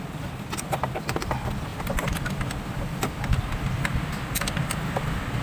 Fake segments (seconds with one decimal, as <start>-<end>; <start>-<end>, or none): none